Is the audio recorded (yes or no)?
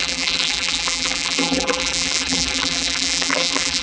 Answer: no